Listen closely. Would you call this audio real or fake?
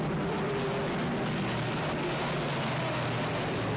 real